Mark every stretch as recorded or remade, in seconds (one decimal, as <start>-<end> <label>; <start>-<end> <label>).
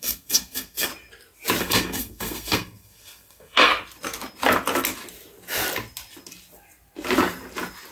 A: 0.0-0.9 remade; 0.9-1.6 recorded; 1.6-3.7 remade; 3.7-7.9 recorded